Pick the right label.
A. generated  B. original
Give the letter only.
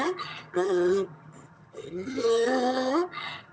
A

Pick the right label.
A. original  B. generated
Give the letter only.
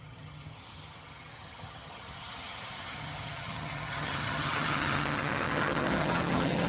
B